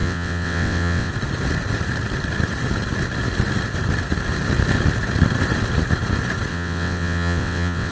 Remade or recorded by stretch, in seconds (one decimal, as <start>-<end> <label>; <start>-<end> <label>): 0.0-1.1 remade; 1.1-6.5 recorded; 6.5-7.9 remade